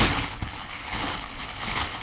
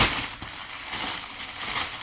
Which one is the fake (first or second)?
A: first